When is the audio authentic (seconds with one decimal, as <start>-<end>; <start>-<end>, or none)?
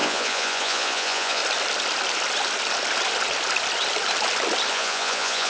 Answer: 1.4-4.7